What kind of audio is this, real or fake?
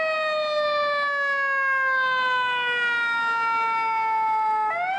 real